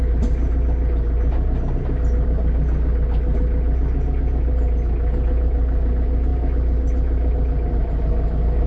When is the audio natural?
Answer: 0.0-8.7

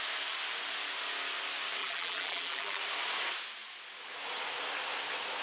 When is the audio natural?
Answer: 0.0-1.8; 2.8-5.4

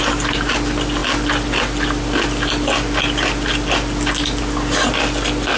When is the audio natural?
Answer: 0.0-5.6

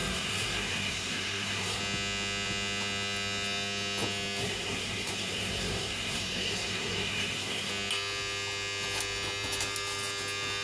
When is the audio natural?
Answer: 1.8-4.4; 7.7-10.6

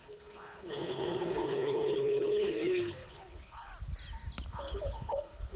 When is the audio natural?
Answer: 3.7-4.5

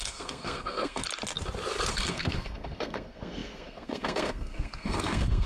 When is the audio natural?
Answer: 1.0-1.9